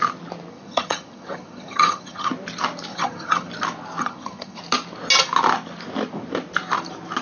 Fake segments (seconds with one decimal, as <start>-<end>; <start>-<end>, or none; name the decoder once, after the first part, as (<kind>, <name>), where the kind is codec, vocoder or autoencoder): 0.5-2.3 (vocoder, HiFi-GAN); 2.9-3.5; 4.0-4.6